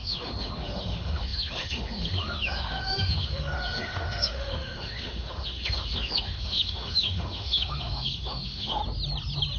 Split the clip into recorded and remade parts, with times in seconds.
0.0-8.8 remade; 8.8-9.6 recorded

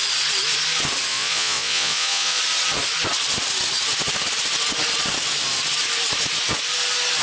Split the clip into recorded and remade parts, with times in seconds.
0.0-1.1 recorded; 1.1-2.4 remade; 2.4-7.2 recorded

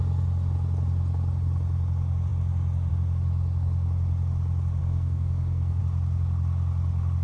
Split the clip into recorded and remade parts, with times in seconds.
0.0-4.8 recorded; 4.8-5.8 remade; 5.8-7.2 recorded

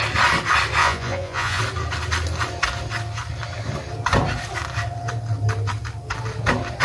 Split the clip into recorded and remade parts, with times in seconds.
0.0-0.8 recorded; 0.8-1.6 remade; 1.6-6.8 recorded

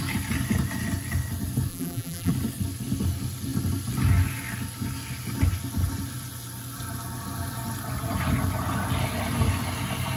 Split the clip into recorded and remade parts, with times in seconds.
0.0-1.7 recorded; 1.7-2.3 remade; 2.3-10.2 recorded

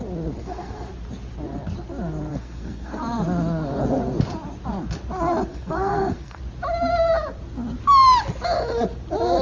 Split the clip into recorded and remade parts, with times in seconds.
0.0-0.4 recorded; 0.4-0.9 remade; 0.9-2.3 recorded; 2.3-3.0 remade; 3.0-5.5 recorded; 5.5-6.4 remade; 6.4-9.4 recorded

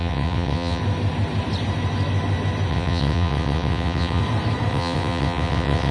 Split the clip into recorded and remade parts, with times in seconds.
0.0-0.8 remade; 0.8-2.7 recorded; 2.7-4.2 remade; 4.2-4.7 recorded; 4.7-5.9 remade

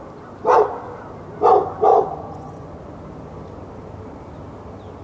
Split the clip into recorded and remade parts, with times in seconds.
0.0-1.9 recorded; 1.9-2.8 remade; 2.8-5.0 recorded